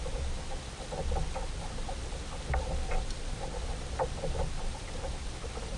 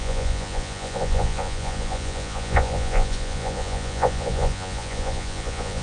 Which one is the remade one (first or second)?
second